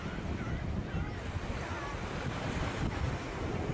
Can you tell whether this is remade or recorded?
recorded